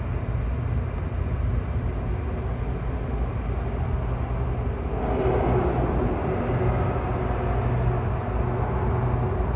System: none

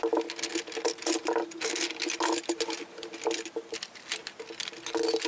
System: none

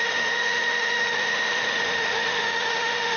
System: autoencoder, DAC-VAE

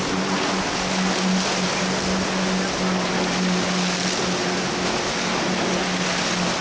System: none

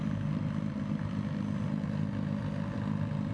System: none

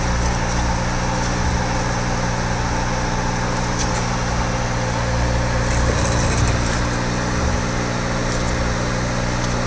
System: none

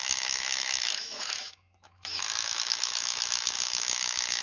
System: autoencoder, DAC-VAE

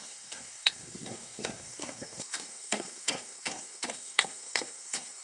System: codec, SNAC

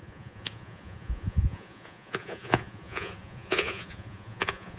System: vocoder, Vocos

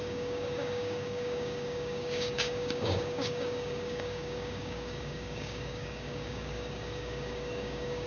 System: codec, DAC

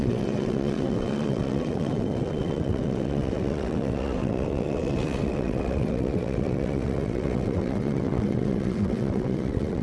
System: vocoder, WaveNeXt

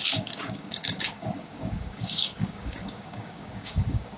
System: codec, DAC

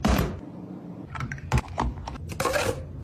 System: none